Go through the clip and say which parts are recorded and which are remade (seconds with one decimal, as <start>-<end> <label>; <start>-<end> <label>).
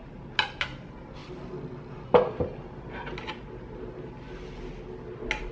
0.0-5.5 recorded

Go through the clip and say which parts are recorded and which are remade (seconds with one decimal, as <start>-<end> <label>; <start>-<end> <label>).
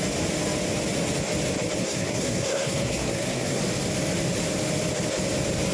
0.0-1.8 recorded; 1.8-3.6 remade; 3.6-5.7 recorded